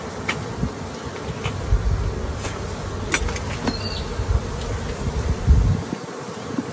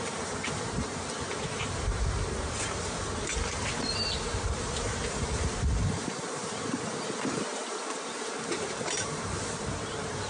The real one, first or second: first